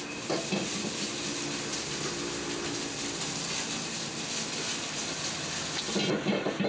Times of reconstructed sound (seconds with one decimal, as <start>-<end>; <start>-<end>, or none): none